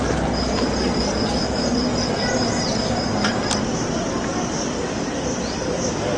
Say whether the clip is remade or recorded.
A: recorded